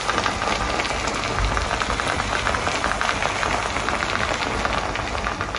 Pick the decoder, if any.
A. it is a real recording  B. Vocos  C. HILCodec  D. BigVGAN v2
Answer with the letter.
A